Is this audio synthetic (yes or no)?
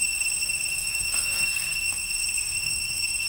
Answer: yes